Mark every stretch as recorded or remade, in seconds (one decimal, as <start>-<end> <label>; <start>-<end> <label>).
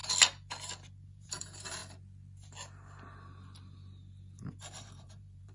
0.0-1.1 recorded; 1.1-1.8 remade; 1.8-4.6 recorded; 4.6-5.5 remade